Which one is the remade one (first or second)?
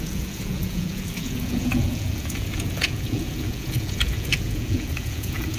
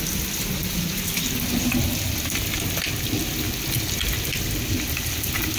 first